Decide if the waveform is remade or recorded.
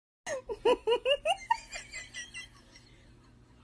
recorded